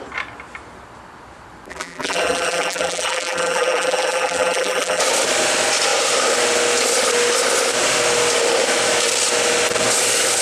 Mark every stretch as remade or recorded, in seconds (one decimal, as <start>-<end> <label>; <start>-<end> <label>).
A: 0.0-1.7 recorded; 1.7-5.0 remade; 5.0-10.4 recorded